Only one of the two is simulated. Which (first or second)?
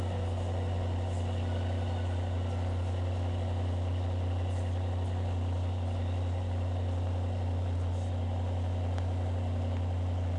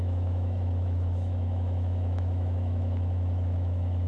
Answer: second